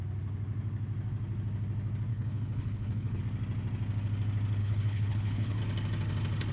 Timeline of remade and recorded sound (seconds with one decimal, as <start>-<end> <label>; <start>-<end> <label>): 0.0-2.1 recorded; 2.1-3.2 remade; 3.2-4.6 recorded; 4.6-5.6 remade; 5.6-6.5 recorded